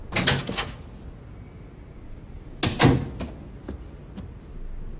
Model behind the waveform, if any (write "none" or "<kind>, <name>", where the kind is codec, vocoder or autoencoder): none